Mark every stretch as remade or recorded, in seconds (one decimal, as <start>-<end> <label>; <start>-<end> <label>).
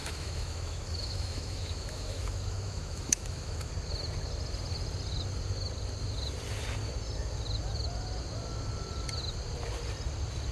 0.0-3.7 remade; 3.7-10.5 recorded